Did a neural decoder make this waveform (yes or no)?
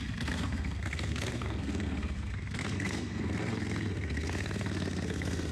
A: yes